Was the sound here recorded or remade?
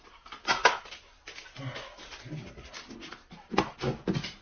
recorded